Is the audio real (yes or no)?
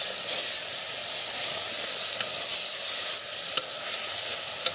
yes